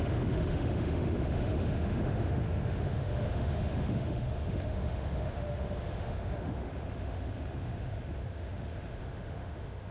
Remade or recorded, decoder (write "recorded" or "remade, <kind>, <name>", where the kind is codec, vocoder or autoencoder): remade, autoencoder, DAC-VAE